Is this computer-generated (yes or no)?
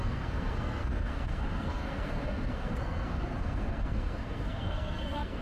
yes